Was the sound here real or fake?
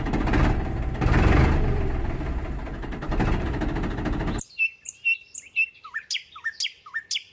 real